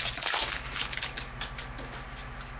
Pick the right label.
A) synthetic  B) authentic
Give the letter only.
B